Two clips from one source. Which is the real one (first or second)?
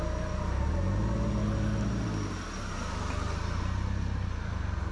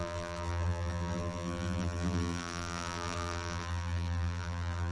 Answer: first